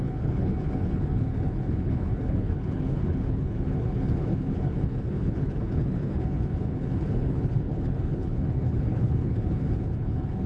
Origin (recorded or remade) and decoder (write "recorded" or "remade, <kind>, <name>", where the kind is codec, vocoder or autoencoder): remade, codec, HILCodec